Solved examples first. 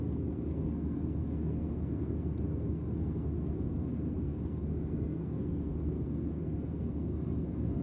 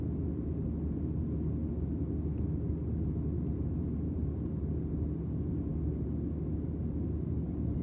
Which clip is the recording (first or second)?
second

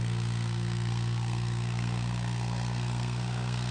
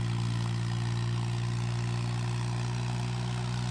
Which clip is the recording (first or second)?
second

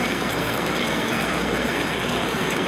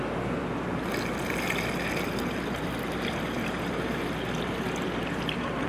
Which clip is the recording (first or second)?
second